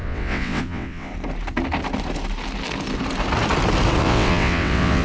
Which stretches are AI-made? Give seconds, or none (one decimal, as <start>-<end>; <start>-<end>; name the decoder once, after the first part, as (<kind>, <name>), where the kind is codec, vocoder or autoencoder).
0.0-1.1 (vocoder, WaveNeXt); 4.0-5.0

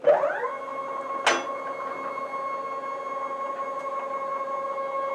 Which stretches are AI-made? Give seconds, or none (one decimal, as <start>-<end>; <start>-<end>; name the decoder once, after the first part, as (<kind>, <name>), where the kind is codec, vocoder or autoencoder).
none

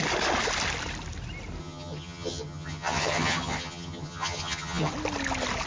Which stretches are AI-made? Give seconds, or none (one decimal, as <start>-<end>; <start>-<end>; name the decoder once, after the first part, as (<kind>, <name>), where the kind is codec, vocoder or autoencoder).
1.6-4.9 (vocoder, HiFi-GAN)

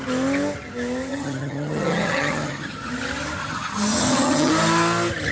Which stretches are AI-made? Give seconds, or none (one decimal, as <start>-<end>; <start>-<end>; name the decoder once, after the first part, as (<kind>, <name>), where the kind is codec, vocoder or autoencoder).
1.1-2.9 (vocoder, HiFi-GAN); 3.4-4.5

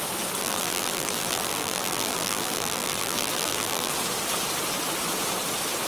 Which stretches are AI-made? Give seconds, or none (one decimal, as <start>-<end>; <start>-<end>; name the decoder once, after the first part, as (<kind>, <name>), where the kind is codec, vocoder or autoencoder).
0.4-3.9 (vocoder, BigVGAN v2)